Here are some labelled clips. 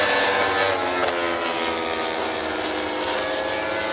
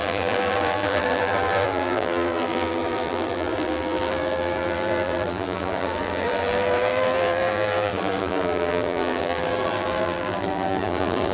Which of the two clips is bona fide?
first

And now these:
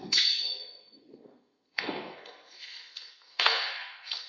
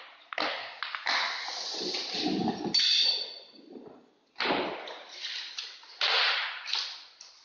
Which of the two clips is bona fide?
second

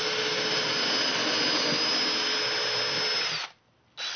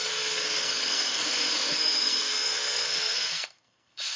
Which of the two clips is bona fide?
first